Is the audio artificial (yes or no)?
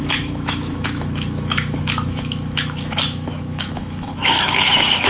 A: yes